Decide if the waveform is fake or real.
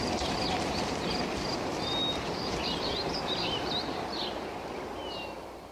real